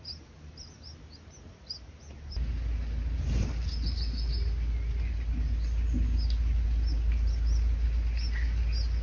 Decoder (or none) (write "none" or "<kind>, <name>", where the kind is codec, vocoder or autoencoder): none